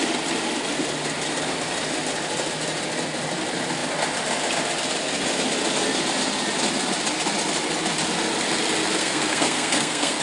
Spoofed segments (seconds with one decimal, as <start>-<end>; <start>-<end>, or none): 9.0-10.2